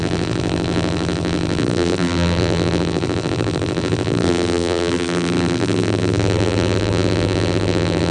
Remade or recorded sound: remade